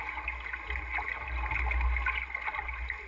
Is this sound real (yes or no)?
yes